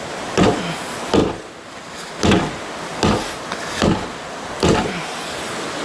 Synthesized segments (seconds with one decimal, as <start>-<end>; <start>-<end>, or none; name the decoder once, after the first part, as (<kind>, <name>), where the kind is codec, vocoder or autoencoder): none

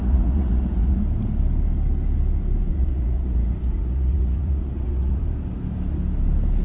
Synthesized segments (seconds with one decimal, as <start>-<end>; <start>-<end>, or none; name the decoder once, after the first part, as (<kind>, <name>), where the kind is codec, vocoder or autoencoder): 0.0-1.0 (vocoder, Vocos); 2.7-5.2